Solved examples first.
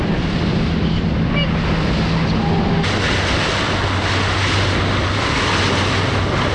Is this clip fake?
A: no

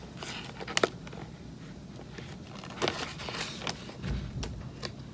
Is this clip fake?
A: no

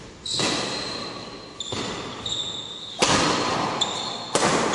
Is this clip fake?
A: no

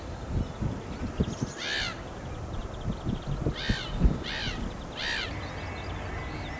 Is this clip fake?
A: no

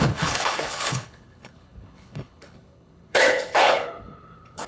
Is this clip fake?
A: yes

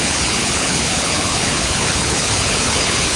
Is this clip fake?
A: yes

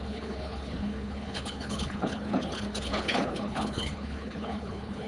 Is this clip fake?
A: yes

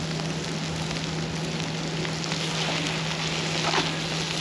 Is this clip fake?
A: no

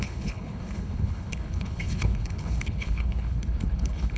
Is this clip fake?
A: yes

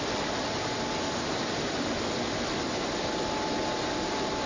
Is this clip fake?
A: no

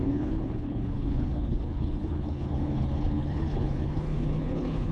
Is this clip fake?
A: yes